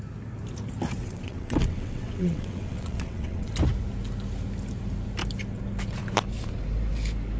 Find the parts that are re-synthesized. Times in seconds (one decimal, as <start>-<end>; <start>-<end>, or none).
1.0-3.5